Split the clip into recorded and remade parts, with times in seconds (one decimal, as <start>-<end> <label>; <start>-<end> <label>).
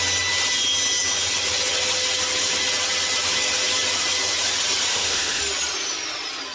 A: 0.0-4.9 recorded; 4.9-5.4 remade; 5.4-6.5 recorded